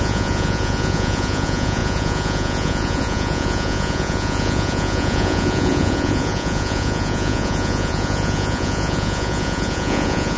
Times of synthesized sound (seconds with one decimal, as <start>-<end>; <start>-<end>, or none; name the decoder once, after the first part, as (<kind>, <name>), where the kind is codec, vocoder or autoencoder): 0.0-10.4 (vocoder, Vocos)